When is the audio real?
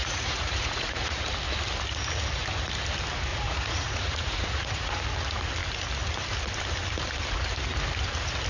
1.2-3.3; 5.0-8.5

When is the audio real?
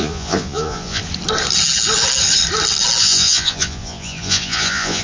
1.0-3.0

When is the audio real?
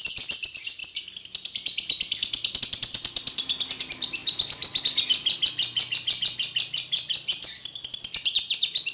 0.0-8.9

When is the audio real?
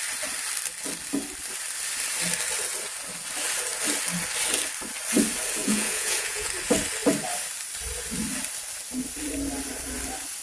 0.0-5.6; 6.5-10.4